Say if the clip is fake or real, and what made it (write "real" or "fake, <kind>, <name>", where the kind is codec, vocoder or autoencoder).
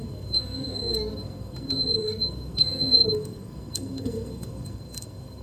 fake, codec, SNAC